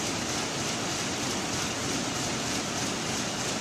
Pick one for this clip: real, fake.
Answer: real